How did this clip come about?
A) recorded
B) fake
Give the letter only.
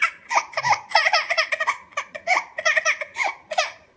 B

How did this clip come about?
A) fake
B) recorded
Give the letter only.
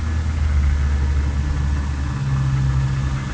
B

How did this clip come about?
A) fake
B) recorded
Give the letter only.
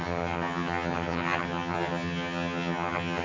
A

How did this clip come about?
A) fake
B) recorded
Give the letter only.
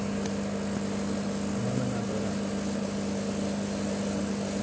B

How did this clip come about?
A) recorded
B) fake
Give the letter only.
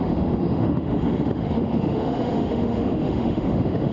B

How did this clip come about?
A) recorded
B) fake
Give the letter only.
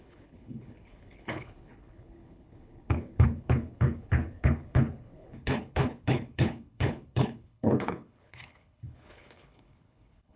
B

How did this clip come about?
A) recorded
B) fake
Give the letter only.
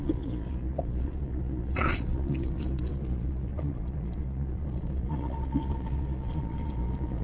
B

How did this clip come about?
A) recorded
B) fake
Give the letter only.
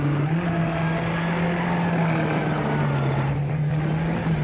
A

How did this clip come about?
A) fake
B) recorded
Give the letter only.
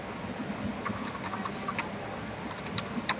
B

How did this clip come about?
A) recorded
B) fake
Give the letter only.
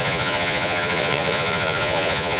B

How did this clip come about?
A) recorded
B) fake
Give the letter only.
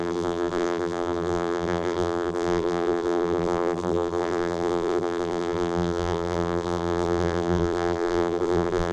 B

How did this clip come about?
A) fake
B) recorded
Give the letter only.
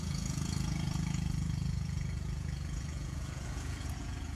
A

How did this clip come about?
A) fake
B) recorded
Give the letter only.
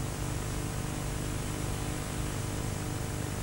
B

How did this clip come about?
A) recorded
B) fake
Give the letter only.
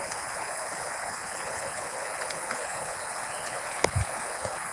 B